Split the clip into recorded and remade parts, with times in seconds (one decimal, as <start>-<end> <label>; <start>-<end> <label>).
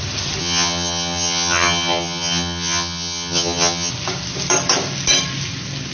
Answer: 0.0-0.4 recorded; 0.4-3.9 remade; 3.9-5.9 recorded